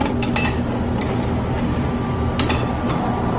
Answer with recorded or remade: recorded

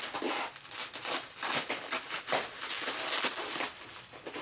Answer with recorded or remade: recorded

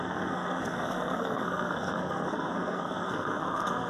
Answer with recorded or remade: remade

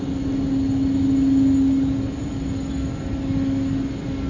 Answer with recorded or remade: recorded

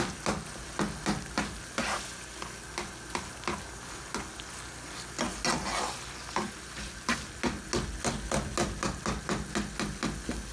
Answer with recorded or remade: recorded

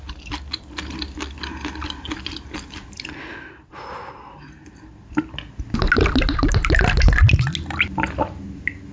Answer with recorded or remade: recorded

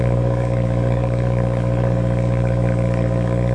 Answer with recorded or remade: remade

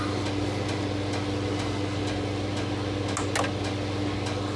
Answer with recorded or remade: recorded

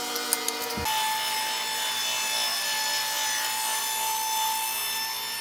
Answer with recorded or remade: recorded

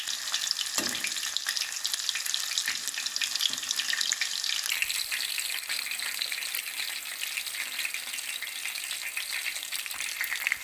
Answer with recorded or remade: recorded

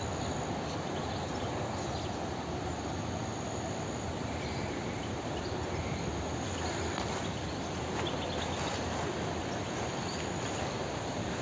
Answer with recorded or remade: recorded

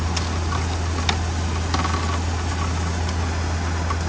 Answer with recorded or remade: recorded